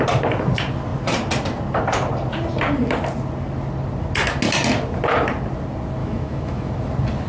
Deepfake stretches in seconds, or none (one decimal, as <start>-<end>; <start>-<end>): 6.0-6.7